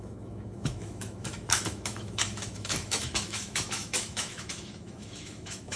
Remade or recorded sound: remade